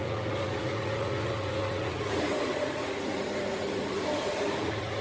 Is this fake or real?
fake